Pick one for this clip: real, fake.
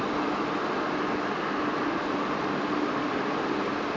real